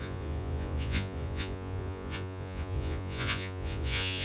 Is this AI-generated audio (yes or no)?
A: yes